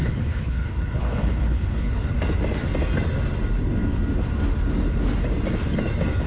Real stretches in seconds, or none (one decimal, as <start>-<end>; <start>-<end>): 2.1-6.3